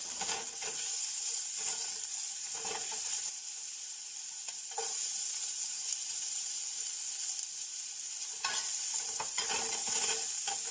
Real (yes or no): yes